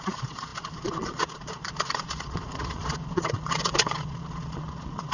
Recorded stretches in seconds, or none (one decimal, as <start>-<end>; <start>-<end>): none